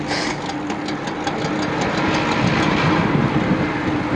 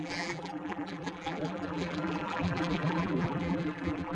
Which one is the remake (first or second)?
second